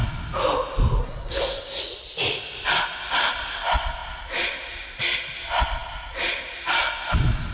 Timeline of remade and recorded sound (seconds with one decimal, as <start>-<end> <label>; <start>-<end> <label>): 0.0-1.0 recorded; 1.0-1.8 remade; 1.8-7.5 recorded